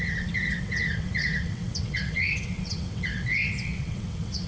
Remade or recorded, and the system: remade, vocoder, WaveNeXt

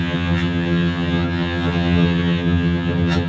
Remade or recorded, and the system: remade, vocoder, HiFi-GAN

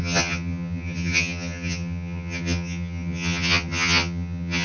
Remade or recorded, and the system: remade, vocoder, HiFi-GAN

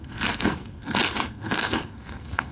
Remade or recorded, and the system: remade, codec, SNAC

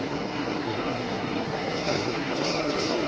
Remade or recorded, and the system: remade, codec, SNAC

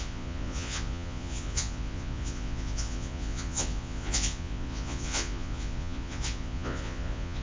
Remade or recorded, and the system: remade, vocoder, Vocos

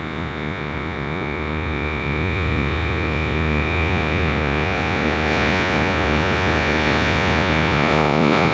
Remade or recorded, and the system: remade, vocoder, Vocos